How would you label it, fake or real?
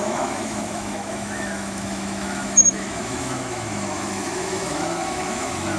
fake